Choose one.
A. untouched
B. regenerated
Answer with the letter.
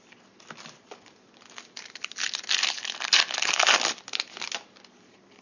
A